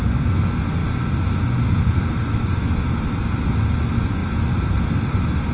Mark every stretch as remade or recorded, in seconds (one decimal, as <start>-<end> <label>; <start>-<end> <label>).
0.0-5.5 recorded